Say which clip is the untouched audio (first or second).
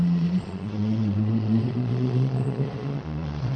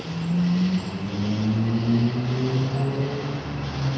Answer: second